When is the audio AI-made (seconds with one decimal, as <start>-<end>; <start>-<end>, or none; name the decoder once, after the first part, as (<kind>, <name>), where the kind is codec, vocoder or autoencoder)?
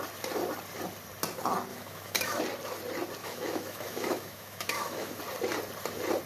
1.7-2.4 (autoencoder, DAC-VAE); 3.2-5.2